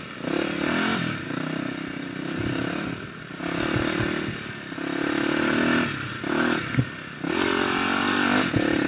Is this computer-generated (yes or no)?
no